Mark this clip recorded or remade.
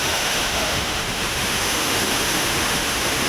remade